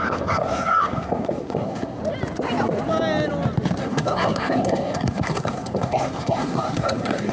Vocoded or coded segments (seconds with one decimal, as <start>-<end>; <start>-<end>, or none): 0.0-2.0; 3.8-7.3